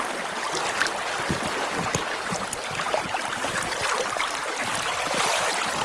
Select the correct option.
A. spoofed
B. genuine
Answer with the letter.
B